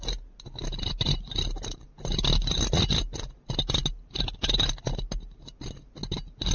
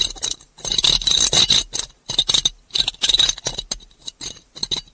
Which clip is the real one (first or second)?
first